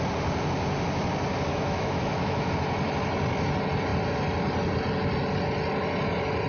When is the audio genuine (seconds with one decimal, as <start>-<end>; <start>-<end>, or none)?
0.0-1.5; 2.5-6.5